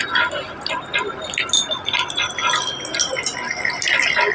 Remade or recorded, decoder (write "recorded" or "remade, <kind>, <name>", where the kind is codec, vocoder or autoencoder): recorded